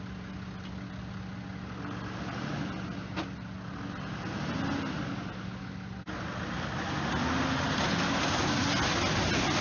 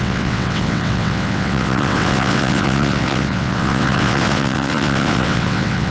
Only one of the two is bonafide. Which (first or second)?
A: first